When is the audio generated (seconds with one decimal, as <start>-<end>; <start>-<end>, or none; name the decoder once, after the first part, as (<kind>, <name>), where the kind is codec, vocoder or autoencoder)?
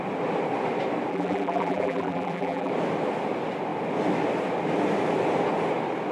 1.1-2.7 (vocoder, BigVGAN v2)